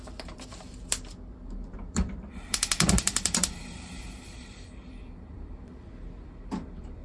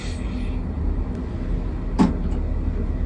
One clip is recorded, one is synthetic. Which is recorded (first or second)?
second